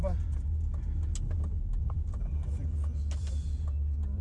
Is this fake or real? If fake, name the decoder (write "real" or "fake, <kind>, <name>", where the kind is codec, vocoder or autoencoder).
real